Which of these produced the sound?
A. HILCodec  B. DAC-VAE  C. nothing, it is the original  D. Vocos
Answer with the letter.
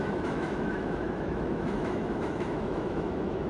B